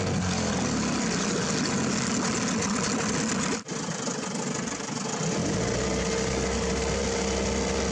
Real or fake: real